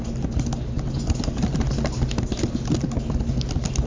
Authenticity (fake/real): real